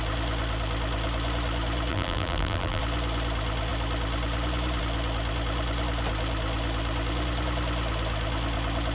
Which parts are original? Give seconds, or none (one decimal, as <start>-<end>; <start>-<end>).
0.0-1.9; 2.8-8.9